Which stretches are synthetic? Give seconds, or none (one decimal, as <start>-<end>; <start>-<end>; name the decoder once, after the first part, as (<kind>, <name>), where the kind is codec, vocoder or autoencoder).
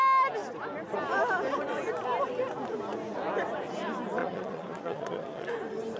4.2-5.5 (vocoder, Vocos)